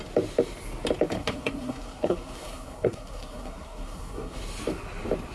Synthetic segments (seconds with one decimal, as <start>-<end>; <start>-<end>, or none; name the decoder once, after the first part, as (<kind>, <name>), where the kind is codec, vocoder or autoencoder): 1.2-4.4 (codec, SNAC)